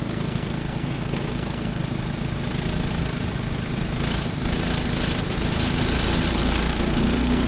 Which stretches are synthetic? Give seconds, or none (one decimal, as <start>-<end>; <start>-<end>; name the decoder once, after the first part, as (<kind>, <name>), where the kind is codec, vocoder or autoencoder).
0.0-1.8 (codec, SNAC); 6.3-7.5